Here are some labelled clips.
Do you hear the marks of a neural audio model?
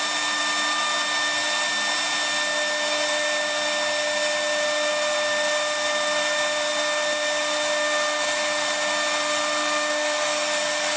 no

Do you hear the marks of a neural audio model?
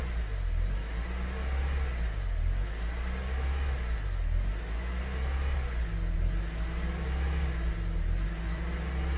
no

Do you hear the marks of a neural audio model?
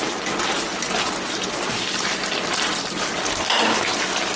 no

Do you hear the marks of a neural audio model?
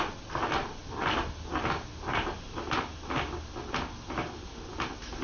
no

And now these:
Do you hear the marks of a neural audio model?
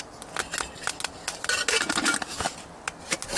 no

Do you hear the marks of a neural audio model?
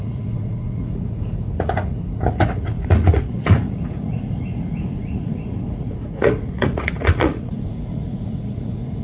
yes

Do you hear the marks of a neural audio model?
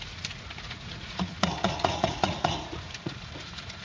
yes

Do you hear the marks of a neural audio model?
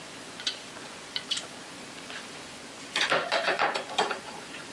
yes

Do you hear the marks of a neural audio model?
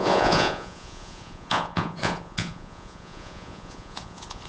yes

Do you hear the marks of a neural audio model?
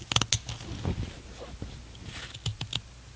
no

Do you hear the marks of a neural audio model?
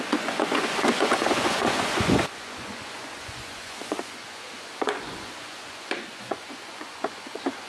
yes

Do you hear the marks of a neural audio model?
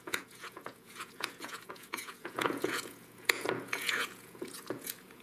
yes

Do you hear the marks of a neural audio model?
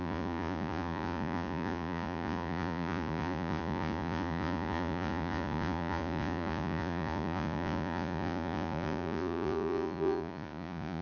yes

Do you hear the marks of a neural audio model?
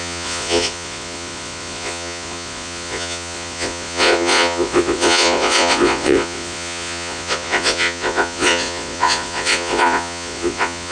yes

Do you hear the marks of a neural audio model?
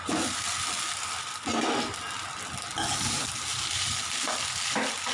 no